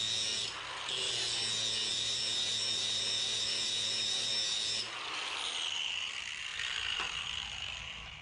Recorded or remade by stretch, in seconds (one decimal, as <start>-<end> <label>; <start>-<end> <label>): 0.0-1.9 recorded; 1.9-4.3 remade; 4.3-6.5 recorded; 6.5-7.2 remade; 7.2-8.2 recorded